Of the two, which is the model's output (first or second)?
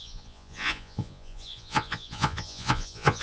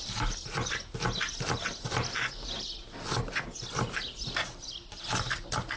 first